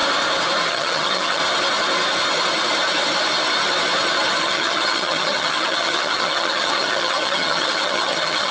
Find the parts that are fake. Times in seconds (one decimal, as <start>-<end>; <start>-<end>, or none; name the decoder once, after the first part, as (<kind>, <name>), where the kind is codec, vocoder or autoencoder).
0.7-1.4 (vocoder, HiFi-GAN); 4.4-8.5